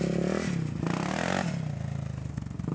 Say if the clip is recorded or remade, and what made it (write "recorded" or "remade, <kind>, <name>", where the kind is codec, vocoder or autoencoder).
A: recorded